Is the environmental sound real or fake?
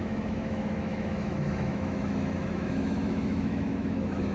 fake